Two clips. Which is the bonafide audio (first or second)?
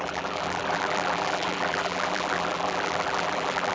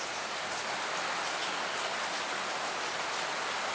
second